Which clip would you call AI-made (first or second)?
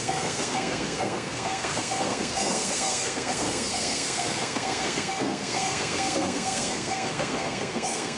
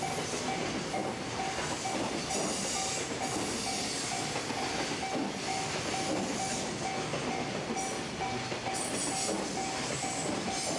first